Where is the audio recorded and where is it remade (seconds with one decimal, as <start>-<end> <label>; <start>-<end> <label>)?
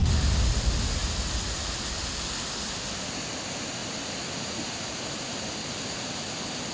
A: 0.0-1.0 recorded; 1.0-2.1 remade; 2.1-3.8 recorded; 3.8-5.8 remade; 5.8-6.7 recorded